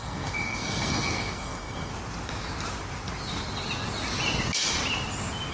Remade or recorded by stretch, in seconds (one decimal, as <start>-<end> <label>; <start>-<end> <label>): 0.0-1.9 remade; 1.9-5.5 recorded

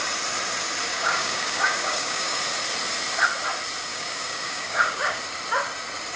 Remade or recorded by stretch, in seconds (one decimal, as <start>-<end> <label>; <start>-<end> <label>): 0.0-0.9 recorded; 0.9-2.4 remade; 2.4-3.9 recorded; 3.9-5.2 remade; 5.2-6.2 recorded

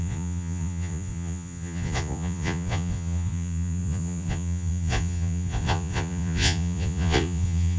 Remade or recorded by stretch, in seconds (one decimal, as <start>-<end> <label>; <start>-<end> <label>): 0.0-7.8 remade

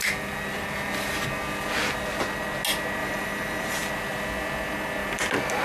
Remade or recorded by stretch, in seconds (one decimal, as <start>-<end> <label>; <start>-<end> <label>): 0.0-3.0 recorded; 3.0-3.9 remade; 3.9-5.6 recorded

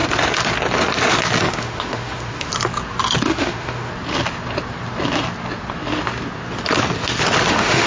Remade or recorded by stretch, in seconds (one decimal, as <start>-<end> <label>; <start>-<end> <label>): 0.0-1.5 recorded; 1.5-2.5 remade; 2.5-3.3 recorded; 3.3-3.9 remade; 3.9-7.5 recorded; 7.5-7.9 remade